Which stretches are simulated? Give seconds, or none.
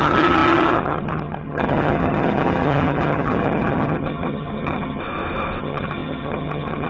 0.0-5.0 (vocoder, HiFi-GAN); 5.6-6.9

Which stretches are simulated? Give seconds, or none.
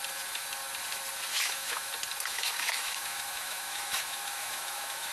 1.3-1.9 (autoencoder, DAC-VAE); 2.3-5.1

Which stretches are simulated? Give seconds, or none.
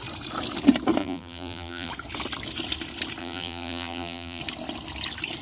1.0-1.9 (vocoder, BigVGAN v2); 3.2-4.4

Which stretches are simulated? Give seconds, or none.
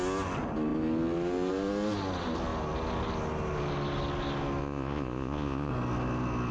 4.6-5.7 (vocoder, Vocos)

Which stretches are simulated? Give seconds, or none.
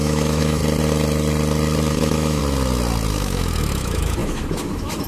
0.0-0.6 (autoencoder, DAC-VAE); 1.9-2.4; 3.1-5.1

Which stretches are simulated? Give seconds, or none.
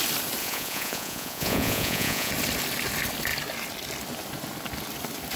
0.4-2.3 (vocoder, Vocos)